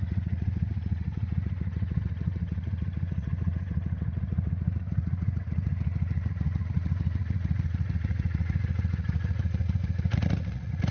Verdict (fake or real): fake